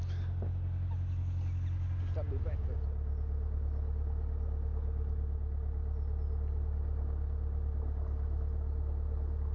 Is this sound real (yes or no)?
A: yes